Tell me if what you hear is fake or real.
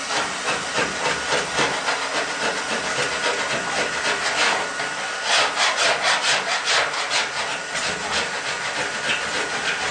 real